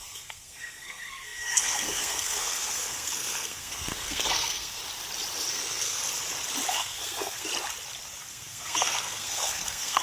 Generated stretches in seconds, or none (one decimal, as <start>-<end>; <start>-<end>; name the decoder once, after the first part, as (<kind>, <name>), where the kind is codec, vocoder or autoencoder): 0.0-4.8 (codec, SNAC); 5.5-6.0; 6.7-7.5; 8.3-10.0